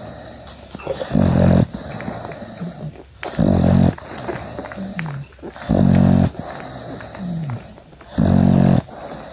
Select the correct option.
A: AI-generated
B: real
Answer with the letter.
B